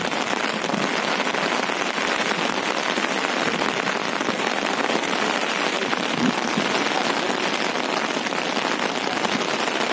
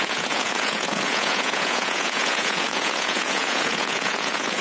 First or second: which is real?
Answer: first